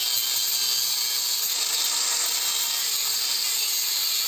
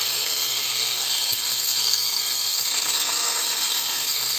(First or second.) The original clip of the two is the first